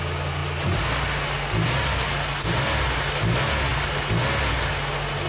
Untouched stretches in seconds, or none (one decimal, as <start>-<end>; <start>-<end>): 0.0-5.3